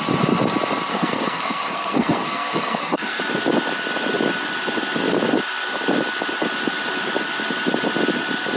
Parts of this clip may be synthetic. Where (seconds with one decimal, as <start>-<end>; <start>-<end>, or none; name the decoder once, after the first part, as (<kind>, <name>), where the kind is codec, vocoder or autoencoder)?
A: 0.9-3.2 (codec, SNAC)